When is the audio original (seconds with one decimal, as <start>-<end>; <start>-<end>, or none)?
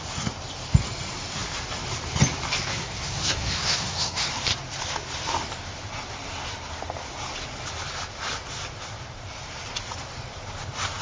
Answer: 0.0-2.7; 4.3-11.0